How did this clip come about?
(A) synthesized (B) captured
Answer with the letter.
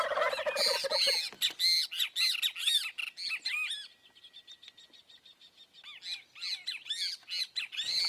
B